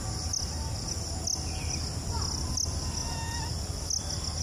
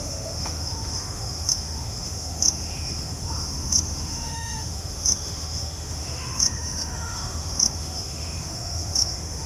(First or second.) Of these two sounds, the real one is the first